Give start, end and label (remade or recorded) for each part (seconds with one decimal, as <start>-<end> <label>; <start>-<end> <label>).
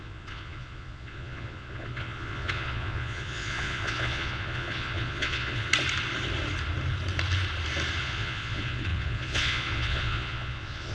0.0-5.7 remade; 5.7-8.0 recorded; 8.0-10.9 remade